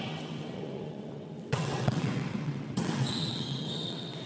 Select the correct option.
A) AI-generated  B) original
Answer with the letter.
A